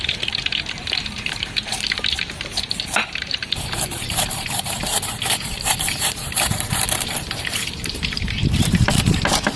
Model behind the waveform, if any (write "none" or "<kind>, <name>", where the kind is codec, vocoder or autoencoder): vocoder, BigVGAN v2